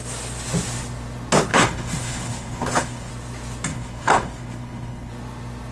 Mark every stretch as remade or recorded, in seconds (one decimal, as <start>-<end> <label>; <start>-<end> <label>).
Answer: 0.0-1.5 recorded; 1.5-3.1 remade; 3.1-3.7 recorded; 3.7-5.1 remade; 5.1-5.7 recorded